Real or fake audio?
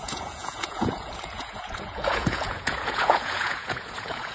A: fake